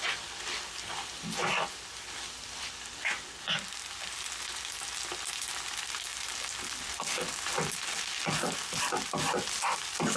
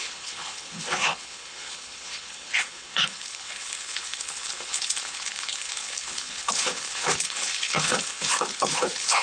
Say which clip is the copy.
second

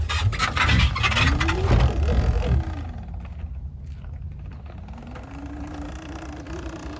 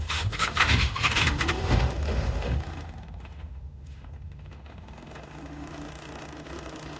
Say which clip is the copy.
second